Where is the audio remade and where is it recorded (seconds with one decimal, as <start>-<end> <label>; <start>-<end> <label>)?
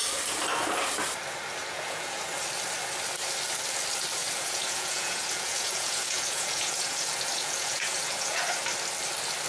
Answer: 0.0-1.6 recorded; 1.6-2.2 remade; 2.2-4.2 recorded; 4.2-8.5 remade; 8.5-9.5 recorded